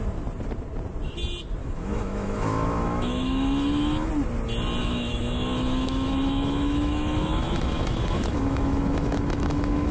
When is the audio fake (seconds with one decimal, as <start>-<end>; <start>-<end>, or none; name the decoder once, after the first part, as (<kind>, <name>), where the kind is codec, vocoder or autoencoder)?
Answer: 1.6-4.1 (autoencoder, DAC-VAE); 4.8-9.9